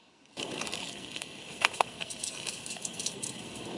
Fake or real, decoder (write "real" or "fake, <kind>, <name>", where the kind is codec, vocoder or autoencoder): fake, codec, SNAC